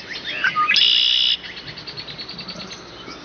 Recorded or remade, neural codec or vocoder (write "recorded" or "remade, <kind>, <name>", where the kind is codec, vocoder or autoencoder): recorded